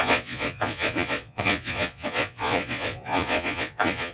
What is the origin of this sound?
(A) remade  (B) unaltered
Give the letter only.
A